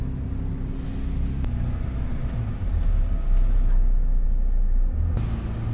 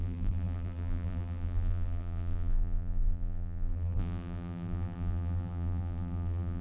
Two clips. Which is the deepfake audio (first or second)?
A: second